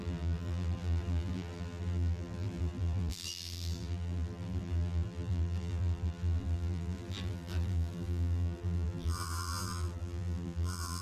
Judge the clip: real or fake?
fake